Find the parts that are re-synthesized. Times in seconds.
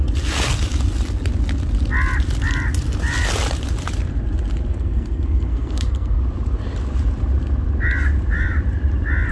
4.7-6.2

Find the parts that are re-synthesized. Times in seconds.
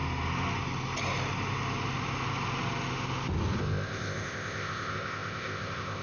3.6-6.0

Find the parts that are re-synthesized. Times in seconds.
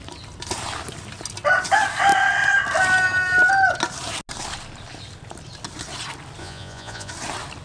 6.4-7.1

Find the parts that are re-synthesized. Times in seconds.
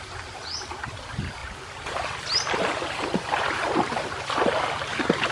none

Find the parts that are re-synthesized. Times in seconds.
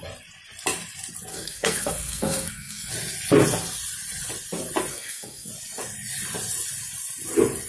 1.3-2.9; 4.9-5.5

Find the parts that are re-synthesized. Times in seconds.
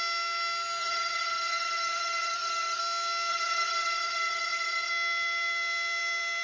0.8-2.8; 3.3-4.9